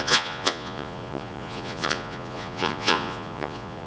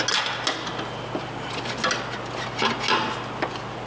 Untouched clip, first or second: second